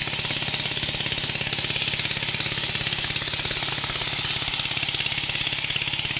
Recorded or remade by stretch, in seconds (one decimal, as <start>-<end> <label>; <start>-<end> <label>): 0.0-6.2 recorded